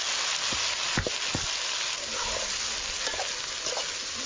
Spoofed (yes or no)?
no